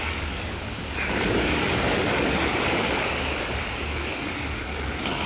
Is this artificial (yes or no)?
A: yes